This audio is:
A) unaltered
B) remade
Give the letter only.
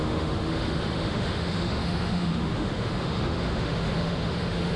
B